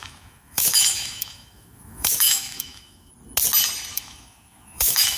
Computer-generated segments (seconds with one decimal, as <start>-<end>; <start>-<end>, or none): 0.0-3.1; 3.9-5.2